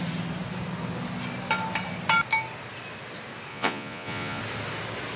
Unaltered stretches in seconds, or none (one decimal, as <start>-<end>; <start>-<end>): 0.0-3.5; 4.4-5.2